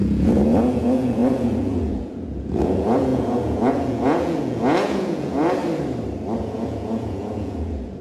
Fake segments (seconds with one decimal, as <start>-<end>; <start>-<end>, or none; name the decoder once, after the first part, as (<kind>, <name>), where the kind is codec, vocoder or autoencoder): 0.0-5.6 (vocoder, Vocos); 6.4-8.0